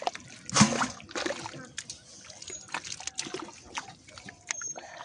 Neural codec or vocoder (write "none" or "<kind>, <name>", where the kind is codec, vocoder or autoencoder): none